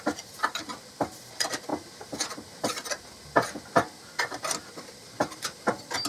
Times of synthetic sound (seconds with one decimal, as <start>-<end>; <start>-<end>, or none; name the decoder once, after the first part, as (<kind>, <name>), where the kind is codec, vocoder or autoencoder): 0.0-1.7 (vocoder, BigVGAN v2); 4.2-6.1